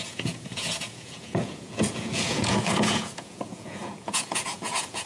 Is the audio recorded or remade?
remade